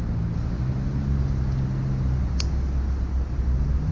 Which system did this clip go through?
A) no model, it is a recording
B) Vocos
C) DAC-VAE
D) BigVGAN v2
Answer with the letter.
A